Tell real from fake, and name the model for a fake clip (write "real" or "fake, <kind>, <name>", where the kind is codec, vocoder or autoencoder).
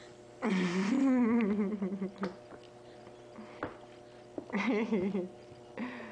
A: real